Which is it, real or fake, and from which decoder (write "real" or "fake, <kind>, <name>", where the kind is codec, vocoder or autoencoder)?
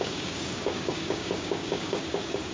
fake, codec, DAC